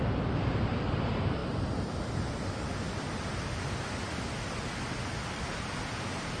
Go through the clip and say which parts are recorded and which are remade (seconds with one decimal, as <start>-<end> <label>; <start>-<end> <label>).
0.0-6.4 recorded